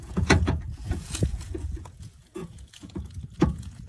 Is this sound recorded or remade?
remade